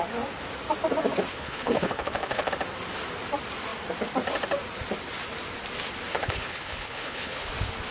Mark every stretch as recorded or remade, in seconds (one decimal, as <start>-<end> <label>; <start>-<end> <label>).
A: 0.0-1.3 recorded; 1.3-2.5 remade; 2.5-6.1 recorded; 6.1-7.5 remade; 7.5-7.9 recorded